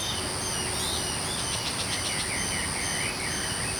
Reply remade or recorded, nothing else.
recorded